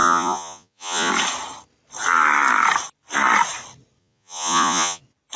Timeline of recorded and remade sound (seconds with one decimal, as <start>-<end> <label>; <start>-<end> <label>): 0.0-1.1 remade; 1.1-4.0 recorded; 4.0-5.0 remade; 5.0-5.4 recorded